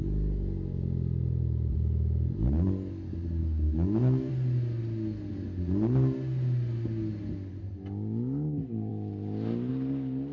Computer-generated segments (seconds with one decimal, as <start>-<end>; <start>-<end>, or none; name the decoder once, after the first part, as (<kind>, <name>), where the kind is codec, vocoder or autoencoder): 3.4-4.3 (autoencoder, DAC-VAE)